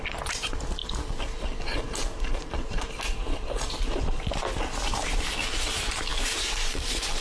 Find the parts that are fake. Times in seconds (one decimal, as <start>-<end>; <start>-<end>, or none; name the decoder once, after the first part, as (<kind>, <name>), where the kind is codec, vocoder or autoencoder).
0.8-4.2 (vocoder, BigVGAN v2); 6.1-7.2